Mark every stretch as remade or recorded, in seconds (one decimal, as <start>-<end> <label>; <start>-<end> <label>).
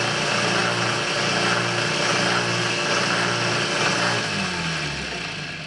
0.0-5.7 recorded